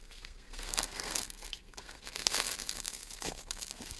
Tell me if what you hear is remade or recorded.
remade